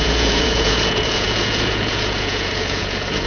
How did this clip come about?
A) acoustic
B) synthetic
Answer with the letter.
B